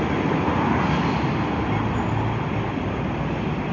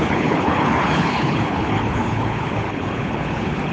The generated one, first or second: second